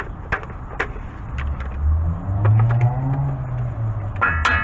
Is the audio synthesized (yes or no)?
no